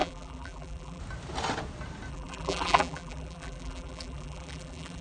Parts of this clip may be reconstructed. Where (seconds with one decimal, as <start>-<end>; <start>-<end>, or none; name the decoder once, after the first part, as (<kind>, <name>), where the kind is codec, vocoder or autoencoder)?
0.0-1.0 (vocoder, BigVGAN v2); 2.1-5.0